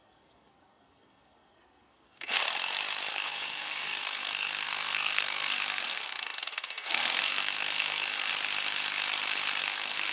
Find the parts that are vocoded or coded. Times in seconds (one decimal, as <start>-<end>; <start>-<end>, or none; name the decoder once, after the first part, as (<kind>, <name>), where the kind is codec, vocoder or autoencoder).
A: 0.0-2.4 (codec, SNAC); 3.1-8.3; 9.6-10.1